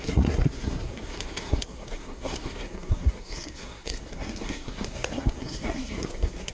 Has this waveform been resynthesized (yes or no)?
yes